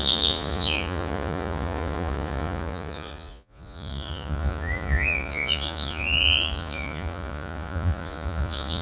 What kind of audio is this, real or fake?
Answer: fake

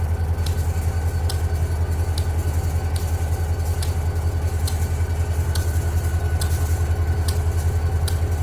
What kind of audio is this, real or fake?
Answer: real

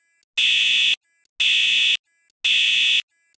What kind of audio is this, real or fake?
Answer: real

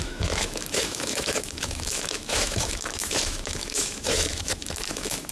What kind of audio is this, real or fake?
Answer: fake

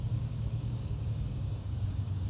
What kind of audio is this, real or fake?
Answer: fake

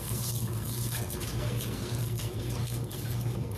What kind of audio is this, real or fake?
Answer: fake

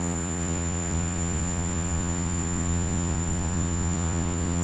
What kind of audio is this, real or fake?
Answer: fake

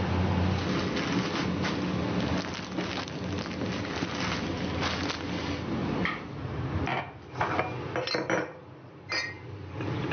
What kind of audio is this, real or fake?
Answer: real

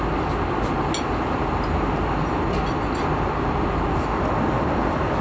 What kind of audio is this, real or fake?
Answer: real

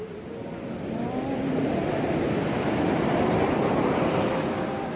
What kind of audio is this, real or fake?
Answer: real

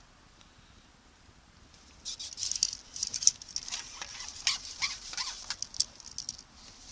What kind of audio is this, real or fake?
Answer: real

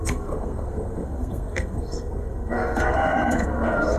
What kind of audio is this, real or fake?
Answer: fake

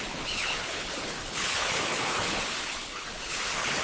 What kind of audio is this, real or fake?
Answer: fake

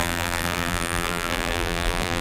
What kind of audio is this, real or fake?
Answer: fake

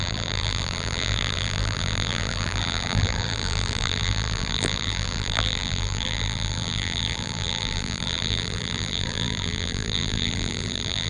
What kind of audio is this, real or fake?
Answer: fake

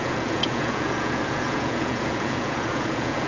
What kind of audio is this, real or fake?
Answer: fake